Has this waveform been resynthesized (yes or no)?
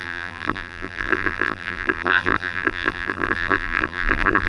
yes